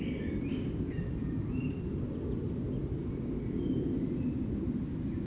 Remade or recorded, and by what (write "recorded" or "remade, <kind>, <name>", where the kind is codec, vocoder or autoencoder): recorded